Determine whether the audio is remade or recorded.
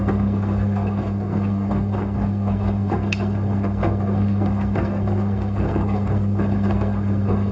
remade